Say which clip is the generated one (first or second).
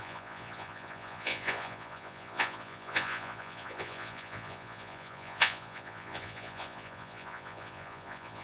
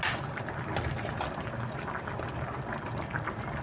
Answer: first